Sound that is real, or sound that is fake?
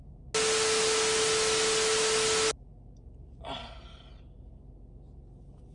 real